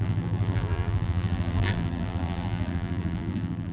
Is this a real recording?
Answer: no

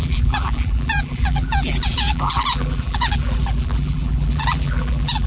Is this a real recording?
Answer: no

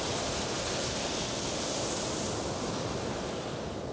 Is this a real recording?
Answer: yes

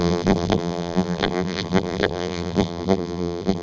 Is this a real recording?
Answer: no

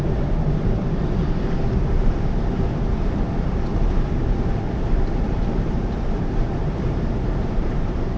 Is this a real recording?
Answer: no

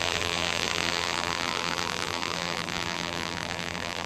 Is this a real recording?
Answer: no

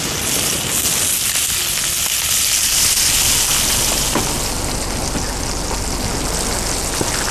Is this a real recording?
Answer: yes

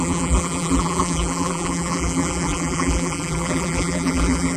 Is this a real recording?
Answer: no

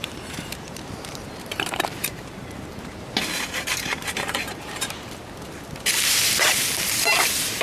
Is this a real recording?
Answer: no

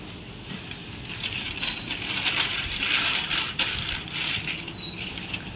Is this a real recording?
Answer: no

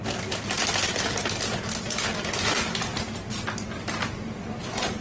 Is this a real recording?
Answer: yes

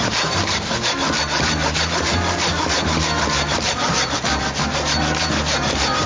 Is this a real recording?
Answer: no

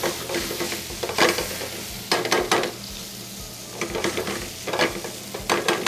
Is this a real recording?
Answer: yes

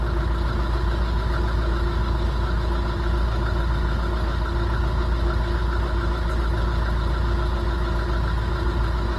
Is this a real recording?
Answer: yes